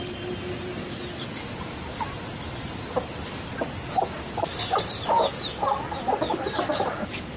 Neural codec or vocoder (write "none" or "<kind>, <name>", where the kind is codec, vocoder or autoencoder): none